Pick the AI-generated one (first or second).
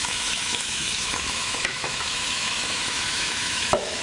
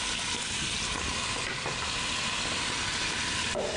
first